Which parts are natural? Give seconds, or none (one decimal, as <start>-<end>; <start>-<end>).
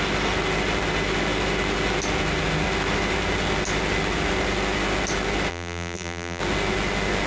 0.0-5.5; 6.4-7.3